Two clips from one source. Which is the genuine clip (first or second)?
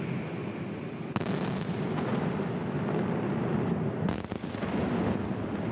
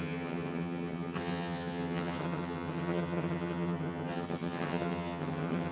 first